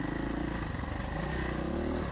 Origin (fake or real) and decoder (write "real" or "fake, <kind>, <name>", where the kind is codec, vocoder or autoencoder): real